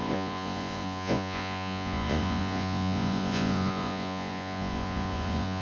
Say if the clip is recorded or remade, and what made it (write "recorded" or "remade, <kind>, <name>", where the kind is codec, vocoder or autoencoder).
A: remade, vocoder, Vocos